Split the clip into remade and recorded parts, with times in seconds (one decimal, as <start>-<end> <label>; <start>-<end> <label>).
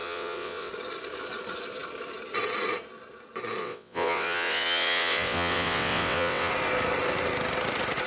0.0-0.7 remade; 0.7-3.6 recorded; 3.6-6.5 remade; 6.5-8.1 recorded